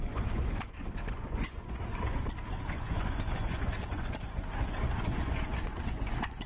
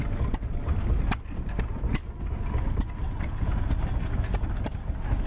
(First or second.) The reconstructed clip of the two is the first